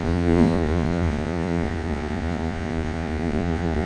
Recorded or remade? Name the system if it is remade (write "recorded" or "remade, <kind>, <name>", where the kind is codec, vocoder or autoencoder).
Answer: remade, vocoder, Vocos